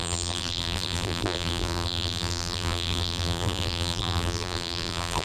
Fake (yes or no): yes